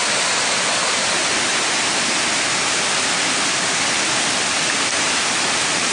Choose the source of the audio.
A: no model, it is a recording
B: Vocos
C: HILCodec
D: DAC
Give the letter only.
A